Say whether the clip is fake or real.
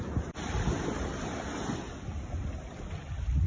real